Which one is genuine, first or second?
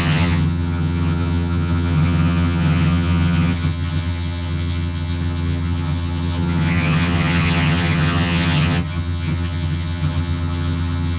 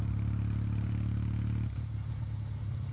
second